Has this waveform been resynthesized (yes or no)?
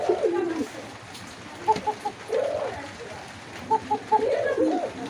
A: no